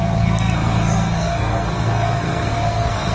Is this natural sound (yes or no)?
no